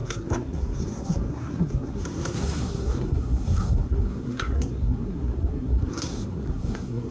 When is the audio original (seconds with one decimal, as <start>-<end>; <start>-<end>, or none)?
none